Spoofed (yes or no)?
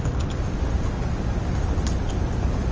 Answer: no